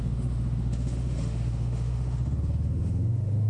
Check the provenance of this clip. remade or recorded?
remade